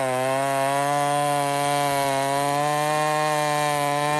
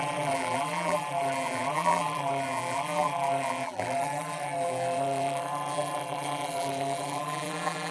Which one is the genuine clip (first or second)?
first